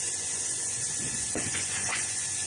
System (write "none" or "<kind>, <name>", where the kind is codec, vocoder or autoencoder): vocoder, Vocos